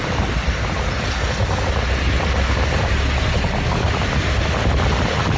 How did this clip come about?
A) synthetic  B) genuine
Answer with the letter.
B